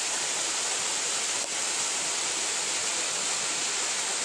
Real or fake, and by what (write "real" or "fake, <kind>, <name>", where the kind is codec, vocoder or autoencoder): fake, vocoder, BigVGAN v2